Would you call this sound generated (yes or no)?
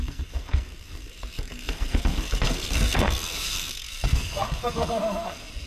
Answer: yes